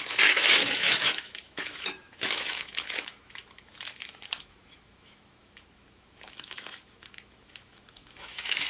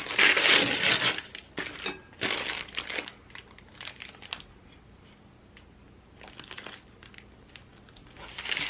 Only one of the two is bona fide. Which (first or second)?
second